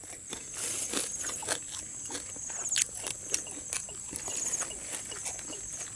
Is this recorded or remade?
recorded